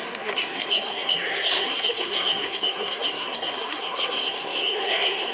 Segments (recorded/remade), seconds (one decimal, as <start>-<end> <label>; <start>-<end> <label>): 0.0-5.3 remade